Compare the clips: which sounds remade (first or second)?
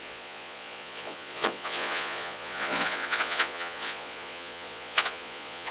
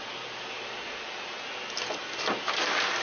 first